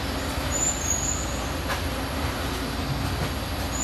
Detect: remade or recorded recorded